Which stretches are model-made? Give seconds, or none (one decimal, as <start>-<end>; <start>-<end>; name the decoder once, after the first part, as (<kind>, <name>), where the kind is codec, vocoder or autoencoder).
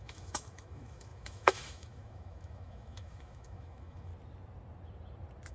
0.0-4.1 (autoencoder, DAC-VAE)